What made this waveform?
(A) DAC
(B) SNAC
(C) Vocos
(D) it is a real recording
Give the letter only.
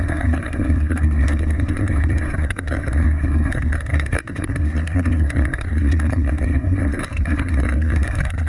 B